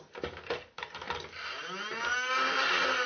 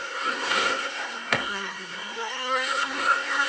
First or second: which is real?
first